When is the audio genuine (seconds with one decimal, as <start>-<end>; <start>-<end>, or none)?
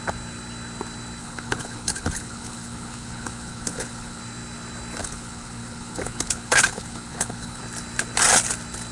0.0-1.2; 4.2-5.0; 7.6-8.9